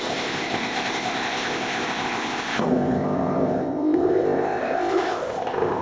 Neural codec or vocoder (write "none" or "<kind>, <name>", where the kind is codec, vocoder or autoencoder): codec, ZipCodec